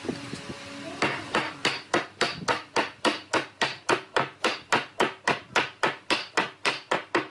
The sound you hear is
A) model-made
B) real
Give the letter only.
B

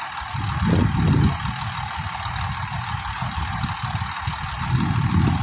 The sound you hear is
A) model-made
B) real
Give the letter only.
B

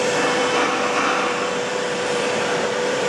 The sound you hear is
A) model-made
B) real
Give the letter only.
A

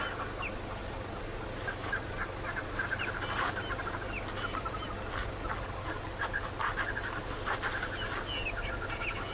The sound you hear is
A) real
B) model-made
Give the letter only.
A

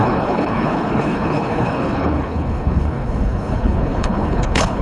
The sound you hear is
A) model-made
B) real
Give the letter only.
A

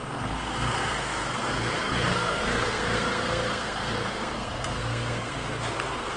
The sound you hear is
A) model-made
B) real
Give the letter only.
A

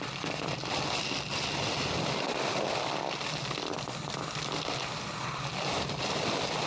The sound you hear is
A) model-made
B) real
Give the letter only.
B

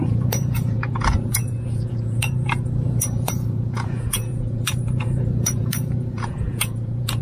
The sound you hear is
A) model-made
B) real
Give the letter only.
A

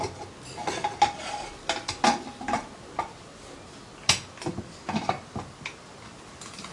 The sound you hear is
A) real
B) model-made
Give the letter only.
A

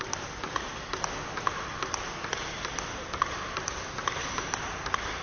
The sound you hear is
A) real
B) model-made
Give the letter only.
A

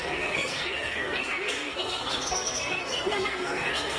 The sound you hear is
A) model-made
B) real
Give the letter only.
A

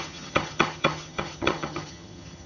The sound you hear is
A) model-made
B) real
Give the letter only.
A